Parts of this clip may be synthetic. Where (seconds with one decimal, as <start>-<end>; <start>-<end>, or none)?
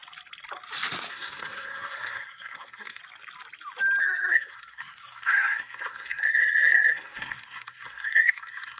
1.1-3.0; 4.0-8.8